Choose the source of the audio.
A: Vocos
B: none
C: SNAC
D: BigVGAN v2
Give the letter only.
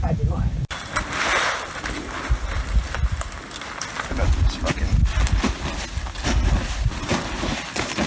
B